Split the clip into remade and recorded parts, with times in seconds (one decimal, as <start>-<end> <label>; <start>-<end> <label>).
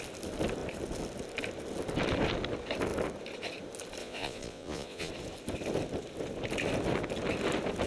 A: 0.0-4.0 recorded; 4.0-5.1 remade; 5.1-7.9 recorded